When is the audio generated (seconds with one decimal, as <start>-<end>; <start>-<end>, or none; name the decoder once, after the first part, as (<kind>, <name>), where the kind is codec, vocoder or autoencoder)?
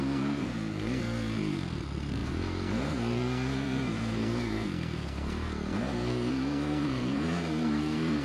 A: 0.0-8.2 (codec, SNAC)